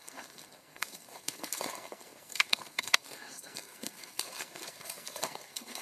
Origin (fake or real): fake